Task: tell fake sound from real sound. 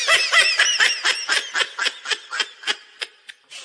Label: real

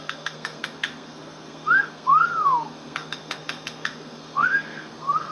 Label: fake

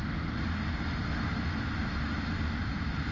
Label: real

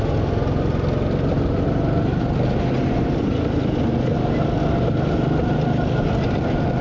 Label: real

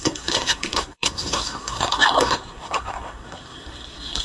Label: fake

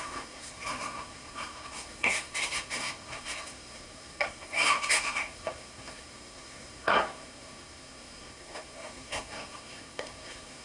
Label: fake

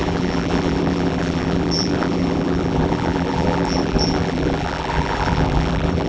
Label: fake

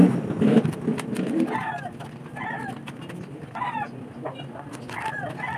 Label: real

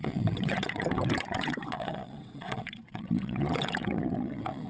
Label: fake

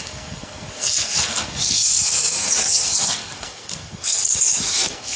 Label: fake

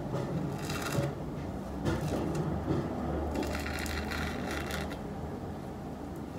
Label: real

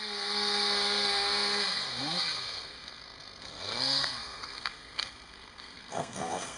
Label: fake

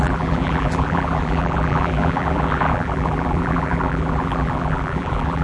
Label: fake